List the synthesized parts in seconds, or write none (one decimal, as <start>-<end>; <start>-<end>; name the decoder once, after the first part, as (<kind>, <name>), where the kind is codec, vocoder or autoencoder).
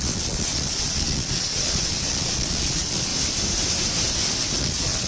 0.0-3.1 (vocoder, Vocos); 4.6-5.1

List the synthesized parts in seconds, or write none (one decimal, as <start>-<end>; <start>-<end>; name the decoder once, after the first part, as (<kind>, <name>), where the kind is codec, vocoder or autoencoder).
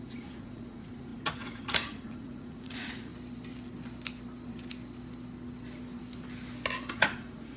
0.0-3.1 (vocoder, Vocos); 6.9-7.6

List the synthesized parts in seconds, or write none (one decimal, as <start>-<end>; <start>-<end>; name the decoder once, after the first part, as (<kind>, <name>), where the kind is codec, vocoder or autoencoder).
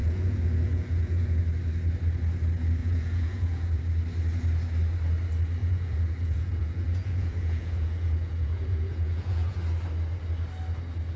0.0-1.4 (vocoder, Vocos); 2.8-3.8; 5.6-9.6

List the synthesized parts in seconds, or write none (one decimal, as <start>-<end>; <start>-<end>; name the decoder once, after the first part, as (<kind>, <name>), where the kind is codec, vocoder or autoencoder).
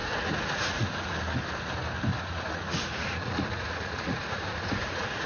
0.0-1.2 (vocoder, Vocos); 2.1-5.3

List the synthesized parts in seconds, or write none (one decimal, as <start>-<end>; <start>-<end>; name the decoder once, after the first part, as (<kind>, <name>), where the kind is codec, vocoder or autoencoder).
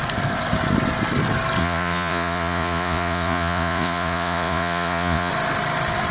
1.6-5.3 (vocoder, Vocos)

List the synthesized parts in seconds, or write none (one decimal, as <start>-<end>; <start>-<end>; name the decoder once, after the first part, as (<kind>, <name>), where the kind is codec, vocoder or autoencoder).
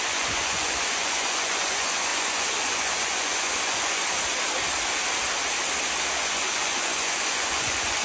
0.0-4.0 (vocoder, Vocos); 6.2-8.0